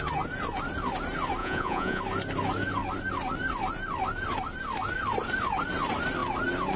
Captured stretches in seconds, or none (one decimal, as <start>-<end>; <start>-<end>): 0.0-1.4; 2.0-6.8